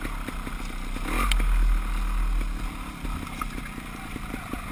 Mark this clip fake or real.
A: real